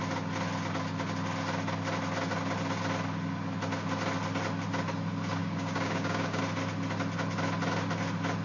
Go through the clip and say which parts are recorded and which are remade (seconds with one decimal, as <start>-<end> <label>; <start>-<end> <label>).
0.0-5.4 recorded; 5.4-6.4 remade; 6.4-8.4 recorded

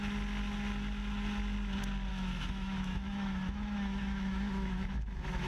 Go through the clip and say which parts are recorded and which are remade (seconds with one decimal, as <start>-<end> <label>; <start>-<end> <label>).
0.0-2.1 recorded; 2.1-5.5 remade